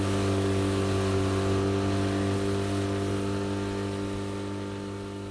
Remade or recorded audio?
recorded